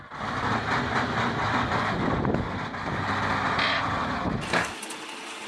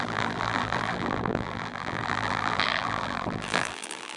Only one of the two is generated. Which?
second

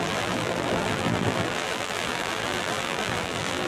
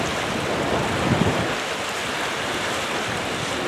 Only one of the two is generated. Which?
first